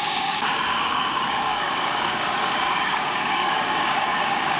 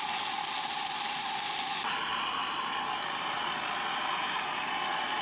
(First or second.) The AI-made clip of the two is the first